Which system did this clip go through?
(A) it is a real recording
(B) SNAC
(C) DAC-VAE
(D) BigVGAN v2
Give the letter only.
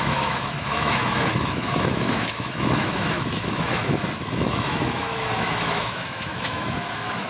C